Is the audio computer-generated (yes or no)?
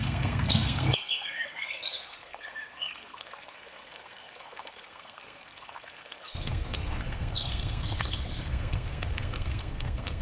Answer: yes